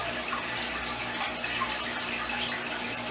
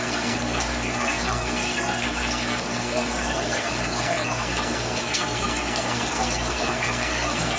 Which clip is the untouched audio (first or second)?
first